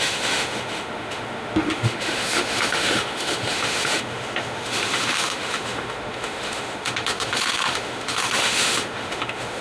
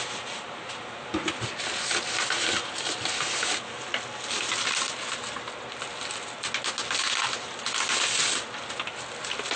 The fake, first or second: first